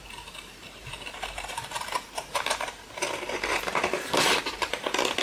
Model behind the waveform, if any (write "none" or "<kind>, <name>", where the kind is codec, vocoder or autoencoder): vocoder, BigVGAN v2